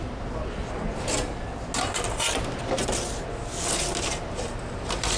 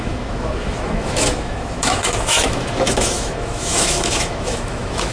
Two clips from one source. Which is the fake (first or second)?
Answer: second